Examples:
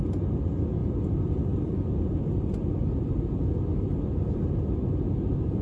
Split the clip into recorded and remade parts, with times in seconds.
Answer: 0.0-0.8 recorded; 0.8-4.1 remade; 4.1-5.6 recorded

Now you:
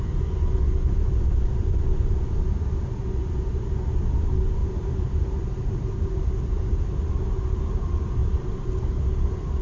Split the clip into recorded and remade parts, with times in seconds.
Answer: 0.0-4.6 recorded; 4.6-7.1 remade; 7.1-8.2 recorded; 8.2-8.7 remade; 8.7-9.6 recorded

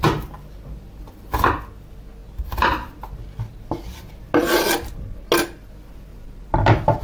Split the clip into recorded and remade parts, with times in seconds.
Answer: 0.0-6.1 recorded; 6.1-7.0 remade

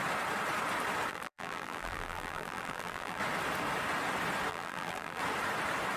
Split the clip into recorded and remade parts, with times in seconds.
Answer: 0.0-1.1 recorded; 1.1-3.2 remade; 3.2-4.5 recorded; 4.5-5.2 remade; 5.2-6.0 recorded

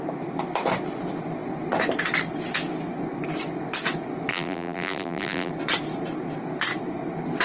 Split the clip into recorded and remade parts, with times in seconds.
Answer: 0.0-4.3 recorded; 4.3-5.5 remade; 5.5-7.4 recorded

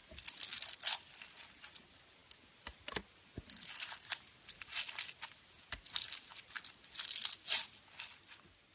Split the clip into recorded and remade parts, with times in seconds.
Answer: 0.0-8.7 recorded

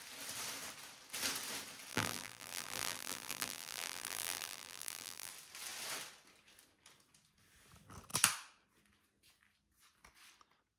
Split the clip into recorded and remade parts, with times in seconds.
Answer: 0.0-1.9 recorded; 1.9-5.3 remade; 5.3-10.8 recorded